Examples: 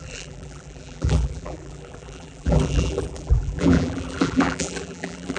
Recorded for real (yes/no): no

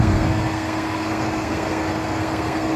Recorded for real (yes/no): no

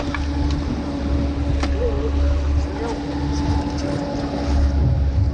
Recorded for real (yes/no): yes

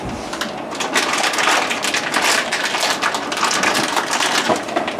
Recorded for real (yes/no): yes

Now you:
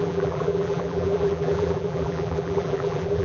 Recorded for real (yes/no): no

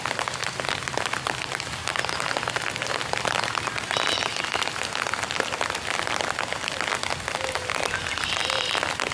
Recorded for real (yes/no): yes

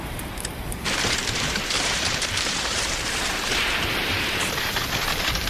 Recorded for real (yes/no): no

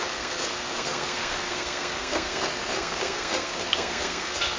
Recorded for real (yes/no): no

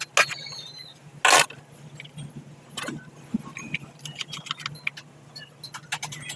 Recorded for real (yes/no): yes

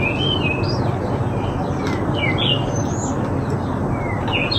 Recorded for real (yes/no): yes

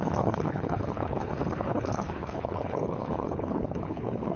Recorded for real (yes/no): no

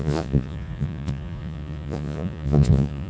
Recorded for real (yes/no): no